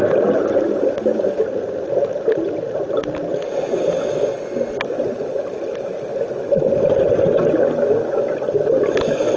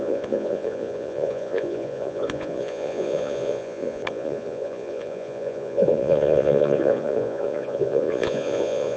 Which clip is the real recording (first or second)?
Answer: first